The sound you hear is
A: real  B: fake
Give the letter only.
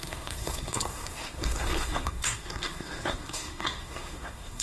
B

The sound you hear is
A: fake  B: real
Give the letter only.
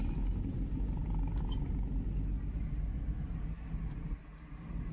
B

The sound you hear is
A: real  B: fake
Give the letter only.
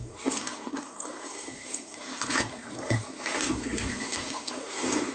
B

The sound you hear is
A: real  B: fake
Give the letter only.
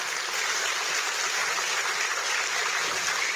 A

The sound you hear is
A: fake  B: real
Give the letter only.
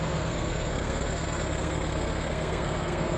A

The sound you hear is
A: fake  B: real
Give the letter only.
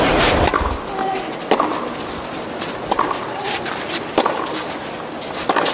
B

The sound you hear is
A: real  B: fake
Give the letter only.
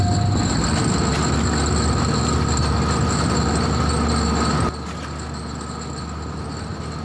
A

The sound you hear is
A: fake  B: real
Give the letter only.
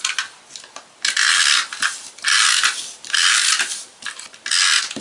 B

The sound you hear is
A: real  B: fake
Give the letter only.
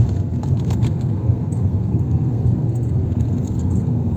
B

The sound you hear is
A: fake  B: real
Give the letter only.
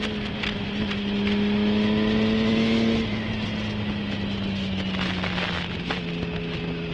B